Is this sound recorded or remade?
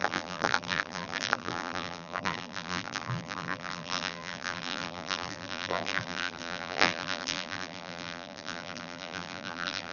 remade